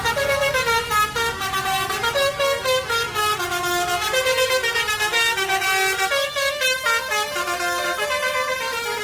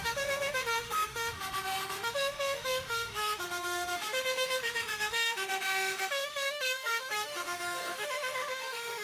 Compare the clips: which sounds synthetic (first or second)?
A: second